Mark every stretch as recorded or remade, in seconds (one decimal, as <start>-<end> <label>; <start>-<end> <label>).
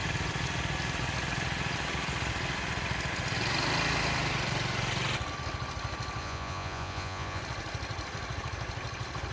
0.0-6.2 recorded; 6.2-7.4 remade; 7.4-9.3 recorded